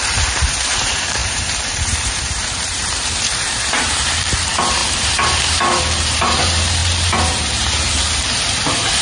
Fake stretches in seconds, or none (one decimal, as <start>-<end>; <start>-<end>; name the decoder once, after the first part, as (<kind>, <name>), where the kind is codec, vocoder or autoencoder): 0.0-9.0 (vocoder, BigVGAN v2)